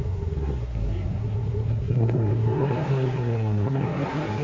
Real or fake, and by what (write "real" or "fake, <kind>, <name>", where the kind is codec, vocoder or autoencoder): fake, codec, SNAC